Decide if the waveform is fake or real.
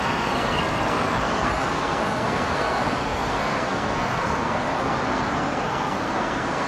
fake